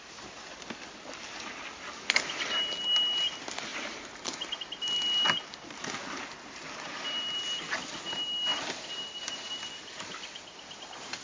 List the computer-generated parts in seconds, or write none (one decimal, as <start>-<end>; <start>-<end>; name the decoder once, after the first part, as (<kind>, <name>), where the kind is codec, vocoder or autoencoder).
3.7-4.6 (vocoder, BigVGAN v2); 8.5-11.2